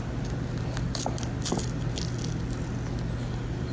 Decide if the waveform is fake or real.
real